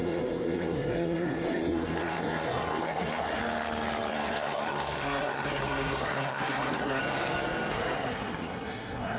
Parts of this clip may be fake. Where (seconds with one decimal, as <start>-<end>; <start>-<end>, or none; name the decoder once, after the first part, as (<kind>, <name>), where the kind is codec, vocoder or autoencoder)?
0.0-3.4 (codec, SNAC); 4.1-7.0; 7.7-9.2